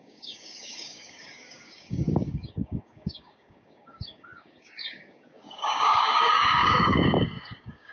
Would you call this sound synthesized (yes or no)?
yes